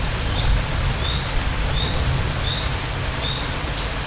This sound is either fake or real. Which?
real